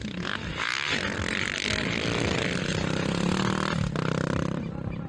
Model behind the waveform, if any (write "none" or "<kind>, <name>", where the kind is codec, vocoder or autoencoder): none